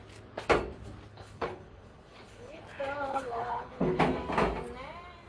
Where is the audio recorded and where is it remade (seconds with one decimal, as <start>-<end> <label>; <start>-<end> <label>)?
0.0-1.1 recorded; 1.1-2.6 remade; 2.6-3.1 recorded; 3.1-4.0 remade; 4.0-5.3 recorded